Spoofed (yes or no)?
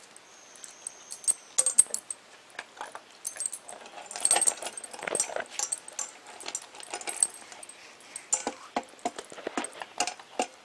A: no